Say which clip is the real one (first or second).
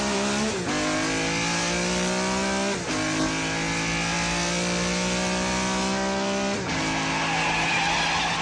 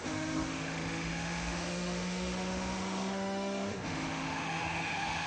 first